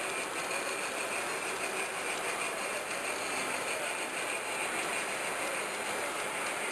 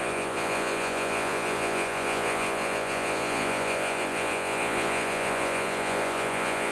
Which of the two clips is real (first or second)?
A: first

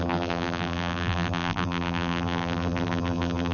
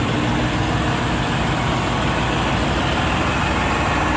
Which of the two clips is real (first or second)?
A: second